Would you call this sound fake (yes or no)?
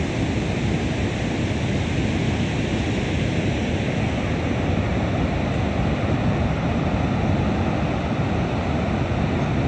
no